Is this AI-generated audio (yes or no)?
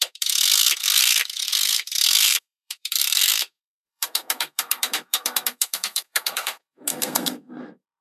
yes